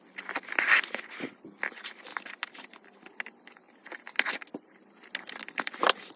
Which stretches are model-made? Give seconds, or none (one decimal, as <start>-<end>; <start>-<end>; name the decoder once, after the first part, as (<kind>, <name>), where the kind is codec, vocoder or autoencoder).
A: none